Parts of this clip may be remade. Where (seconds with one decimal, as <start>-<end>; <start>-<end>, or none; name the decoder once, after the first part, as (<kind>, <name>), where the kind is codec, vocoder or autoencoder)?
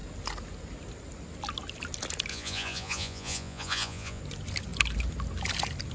2.3-4.2 (vocoder, Vocos)